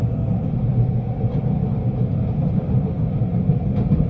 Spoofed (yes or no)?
no